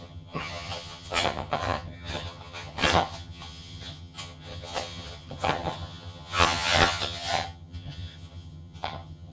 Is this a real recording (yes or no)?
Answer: no